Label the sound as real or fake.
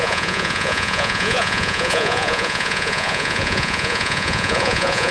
fake